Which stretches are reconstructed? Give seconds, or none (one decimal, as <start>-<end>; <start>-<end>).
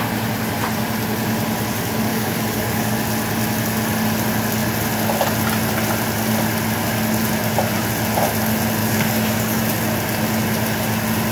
2.1-2.9; 8.8-9.6